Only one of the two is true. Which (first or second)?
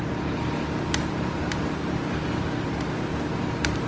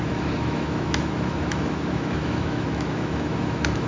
first